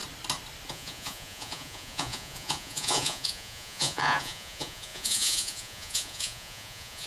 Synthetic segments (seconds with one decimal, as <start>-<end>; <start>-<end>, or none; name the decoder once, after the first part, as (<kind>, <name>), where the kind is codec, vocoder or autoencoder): 0.7-7.1 (vocoder, Vocos)